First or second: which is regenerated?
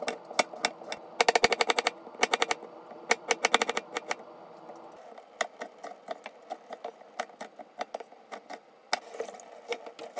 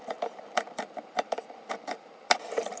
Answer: second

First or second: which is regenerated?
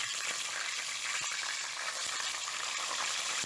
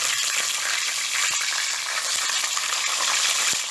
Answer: first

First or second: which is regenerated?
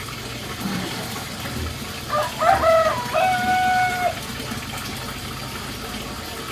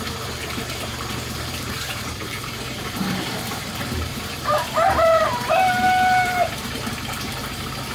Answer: second